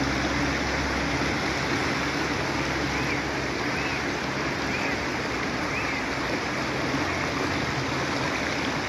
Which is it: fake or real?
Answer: real